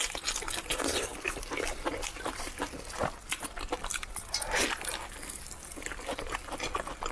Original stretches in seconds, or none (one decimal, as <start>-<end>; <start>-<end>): 0.0-7.1